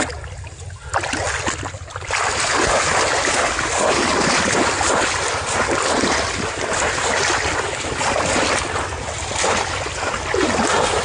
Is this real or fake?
real